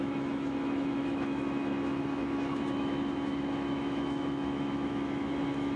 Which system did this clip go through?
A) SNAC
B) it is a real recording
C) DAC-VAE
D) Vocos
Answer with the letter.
C